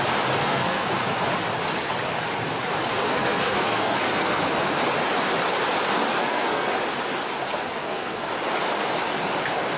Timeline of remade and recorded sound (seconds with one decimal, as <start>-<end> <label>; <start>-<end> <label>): 0.0-0.4 recorded; 0.4-0.9 remade; 0.9-2.9 recorded; 2.9-4.5 remade; 4.5-6.2 recorded; 6.2-6.7 remade; 6.7-7.8 recorded; 7.8-8.3 remade; 8.3-9.8 recorded